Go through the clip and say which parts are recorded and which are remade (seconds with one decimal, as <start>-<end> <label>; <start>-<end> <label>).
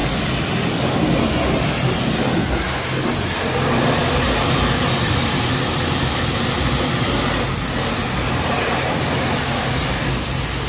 0.0-10.7 recorded